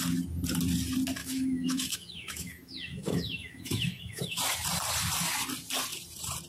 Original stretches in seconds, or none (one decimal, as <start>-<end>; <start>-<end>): 0.0-1.2; 4.4-6.5